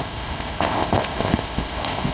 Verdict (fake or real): fake